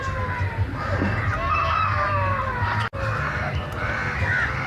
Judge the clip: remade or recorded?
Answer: recorded